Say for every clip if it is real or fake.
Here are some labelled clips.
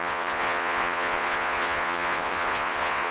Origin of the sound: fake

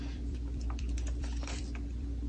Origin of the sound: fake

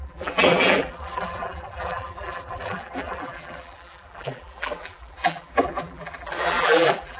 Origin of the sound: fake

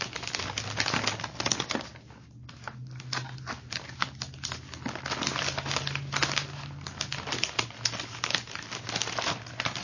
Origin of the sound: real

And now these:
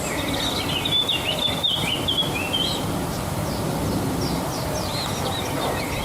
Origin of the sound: real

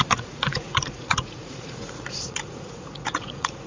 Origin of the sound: fake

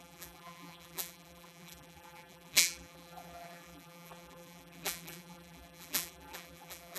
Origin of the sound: fake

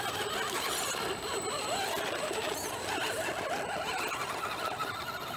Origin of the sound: real